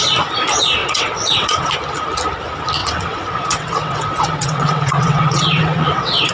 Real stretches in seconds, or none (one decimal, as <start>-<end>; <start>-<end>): 0.0-0.8; 1.7-2.8